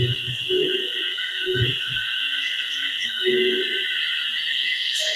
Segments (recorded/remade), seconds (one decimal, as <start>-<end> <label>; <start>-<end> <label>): 0.0-3.6 remade; 3.6-4.5 recorded; 4.5-5.2 remade